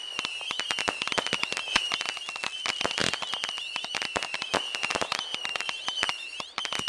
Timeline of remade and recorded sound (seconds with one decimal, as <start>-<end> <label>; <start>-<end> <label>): 0.0-5.5 recorded; 5.5-6.1 remade; 6.1-6.9 recorded